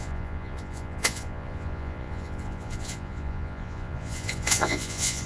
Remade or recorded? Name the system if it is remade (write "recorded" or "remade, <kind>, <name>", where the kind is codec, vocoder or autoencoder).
remade, vocoder, Vocos